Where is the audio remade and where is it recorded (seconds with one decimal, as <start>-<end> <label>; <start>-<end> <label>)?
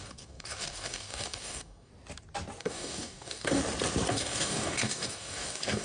0.0-1.9 remade; 1.9-2.6 recorded; 2.6-3.6 remade; 3.6-4.1 recorded; 4.1-5.8 remade